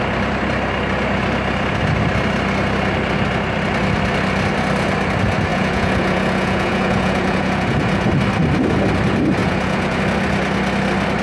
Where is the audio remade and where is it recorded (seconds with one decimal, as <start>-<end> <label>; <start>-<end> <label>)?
0.0-5.5 recorded; 5.5-8.1 remade; 8.1-9.4 recorded; 9.4-10.0 remade; 10.0-11.2 recorded

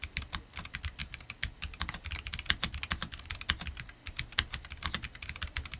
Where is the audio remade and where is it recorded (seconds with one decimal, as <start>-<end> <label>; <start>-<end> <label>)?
0.0-5.8 recorded

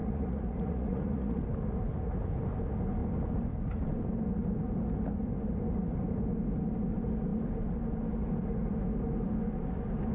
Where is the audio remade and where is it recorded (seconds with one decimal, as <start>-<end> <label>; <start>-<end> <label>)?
0.0-1.4 remade; 1.4-10.1 recorded

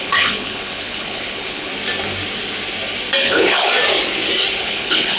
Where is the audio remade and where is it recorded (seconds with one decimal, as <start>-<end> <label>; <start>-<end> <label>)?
0.0-1.7 remade; 1.7-3.2 recorded; 3.2-3.7 remade; 3.7-4.6 recorded; 4.6-5.2 remade

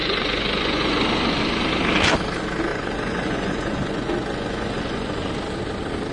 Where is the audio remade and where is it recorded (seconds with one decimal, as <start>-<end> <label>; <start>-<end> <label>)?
0.0-1.0 remade; 1.0-2.7 recorded; 2.7-5.3 remade; 5.3-6.1 recorded

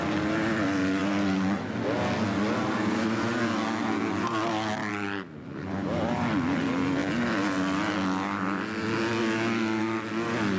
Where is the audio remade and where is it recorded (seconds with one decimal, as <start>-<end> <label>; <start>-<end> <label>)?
0.0-10.6 recorded

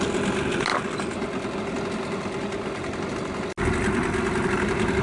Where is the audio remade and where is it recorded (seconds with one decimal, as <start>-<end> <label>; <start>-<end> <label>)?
0.0-5.0 recorded

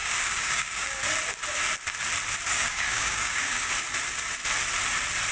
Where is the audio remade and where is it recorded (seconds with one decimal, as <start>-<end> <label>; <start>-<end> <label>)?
0.0-1.0 remade; 1.0-2.5 recorded; 2.5-3.7 remade; 3.7-5.3 recorded